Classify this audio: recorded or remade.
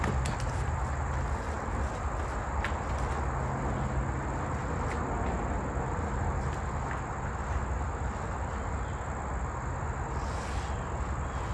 recorded